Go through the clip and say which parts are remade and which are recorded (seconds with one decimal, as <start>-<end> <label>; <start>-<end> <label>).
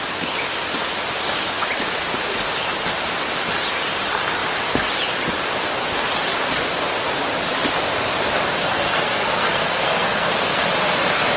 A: 0.0-8.6 recorded; 8.6-10.6 remade; 10.6-11.4 recorded